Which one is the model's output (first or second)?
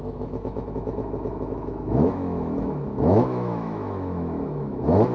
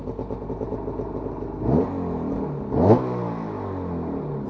first